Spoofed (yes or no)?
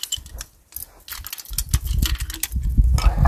no